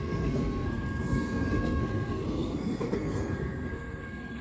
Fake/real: fake